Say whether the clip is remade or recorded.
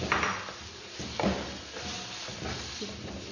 recorded